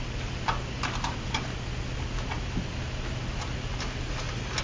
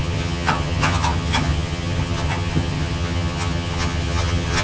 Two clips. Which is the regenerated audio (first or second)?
second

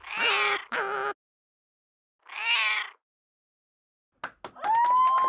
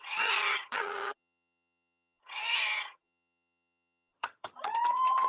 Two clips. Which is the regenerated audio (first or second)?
second